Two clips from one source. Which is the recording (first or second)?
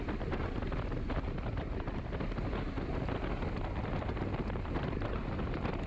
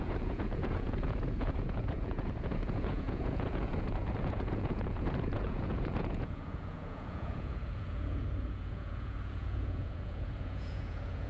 first